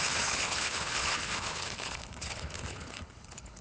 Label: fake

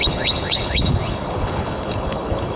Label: fake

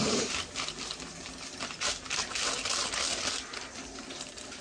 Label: real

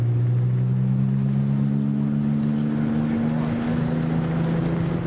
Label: real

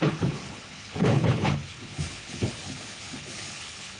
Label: fake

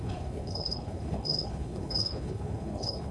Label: fake